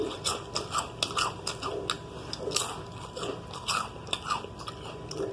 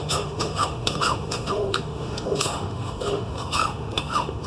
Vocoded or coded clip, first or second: second